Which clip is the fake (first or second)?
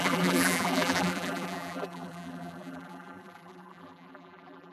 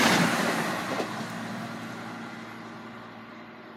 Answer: first